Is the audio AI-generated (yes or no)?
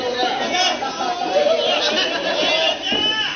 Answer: no